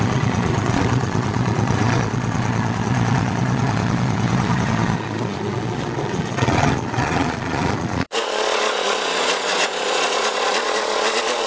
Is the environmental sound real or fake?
fake